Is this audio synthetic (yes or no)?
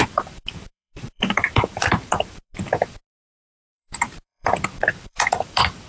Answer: yes